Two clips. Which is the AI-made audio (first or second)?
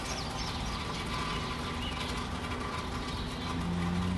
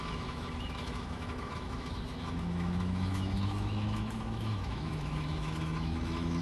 second